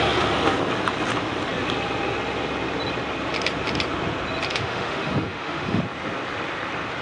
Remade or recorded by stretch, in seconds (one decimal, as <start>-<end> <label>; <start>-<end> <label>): 0.0-4.5 recorded; 4.5-5.8 remade; 5.8-7.0 recorded